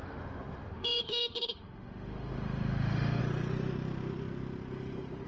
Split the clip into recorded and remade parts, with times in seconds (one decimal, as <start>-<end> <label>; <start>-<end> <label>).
0.0-3.2 remade; 3.2-5.3 recorded